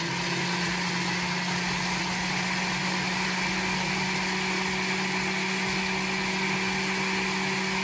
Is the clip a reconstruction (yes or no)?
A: no